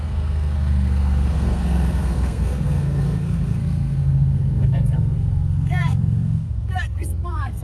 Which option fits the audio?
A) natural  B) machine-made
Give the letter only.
B